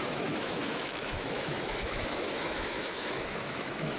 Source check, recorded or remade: remade